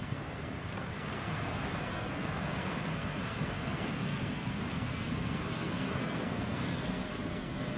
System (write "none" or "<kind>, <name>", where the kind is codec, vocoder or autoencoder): codec, SNAC